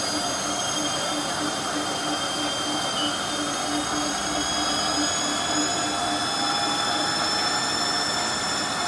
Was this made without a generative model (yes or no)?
yes